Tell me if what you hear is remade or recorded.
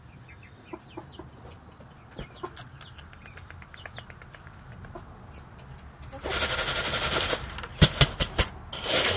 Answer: recorded